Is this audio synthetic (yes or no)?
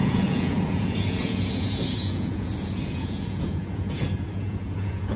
yes